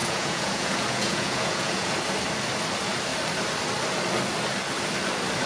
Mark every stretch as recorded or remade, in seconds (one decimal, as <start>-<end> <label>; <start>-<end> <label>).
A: 0.0-1.9 remade; 1.9-5.5 recorded